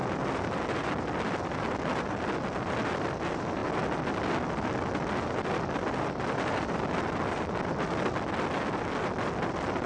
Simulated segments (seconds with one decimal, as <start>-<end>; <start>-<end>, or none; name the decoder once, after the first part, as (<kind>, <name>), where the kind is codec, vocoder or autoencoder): none

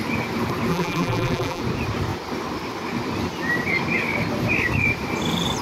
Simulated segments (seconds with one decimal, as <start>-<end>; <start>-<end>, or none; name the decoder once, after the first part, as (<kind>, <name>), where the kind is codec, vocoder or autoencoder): 0.7-1.6 (vocoder, BigVGAN v2)

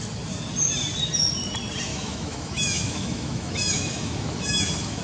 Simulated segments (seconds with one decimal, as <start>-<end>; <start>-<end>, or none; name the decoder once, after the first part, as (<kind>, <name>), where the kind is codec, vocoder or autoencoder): 1.9-5.0 (autoencoder, DAC-VAE)

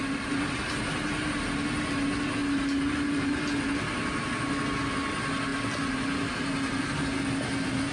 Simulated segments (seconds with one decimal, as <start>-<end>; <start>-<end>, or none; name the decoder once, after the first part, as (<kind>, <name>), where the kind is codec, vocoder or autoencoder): 0.0-0.9 (vocoder, BigVGAN v2)